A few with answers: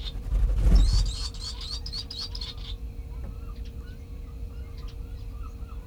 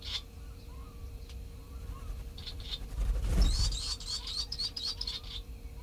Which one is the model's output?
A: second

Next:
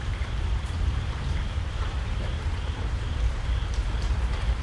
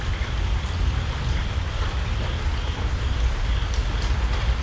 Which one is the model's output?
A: first